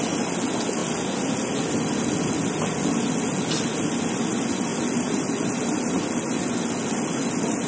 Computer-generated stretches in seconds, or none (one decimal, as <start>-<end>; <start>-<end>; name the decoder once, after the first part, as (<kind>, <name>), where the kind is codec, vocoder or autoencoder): none